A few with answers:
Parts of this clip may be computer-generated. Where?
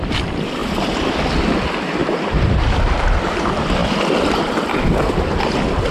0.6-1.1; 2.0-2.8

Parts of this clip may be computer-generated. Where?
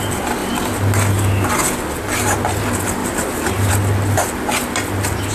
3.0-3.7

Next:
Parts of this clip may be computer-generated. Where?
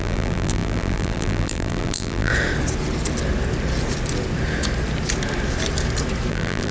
0.0-2.3; 6.3-6.7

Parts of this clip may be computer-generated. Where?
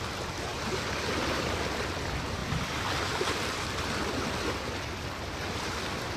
2.4-4.1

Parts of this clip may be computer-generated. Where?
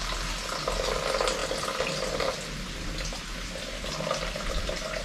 none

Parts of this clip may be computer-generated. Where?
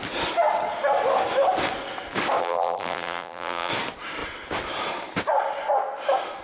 2.4-3.7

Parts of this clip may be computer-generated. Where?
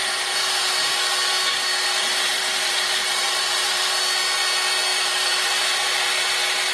0.0-4.0; 4.9-6.3